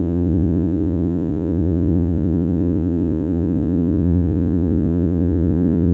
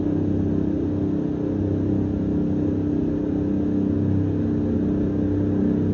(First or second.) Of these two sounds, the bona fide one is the second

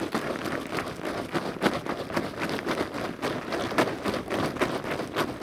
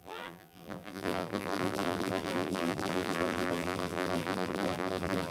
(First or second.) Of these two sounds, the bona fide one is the first